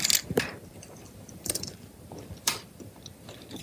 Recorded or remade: remade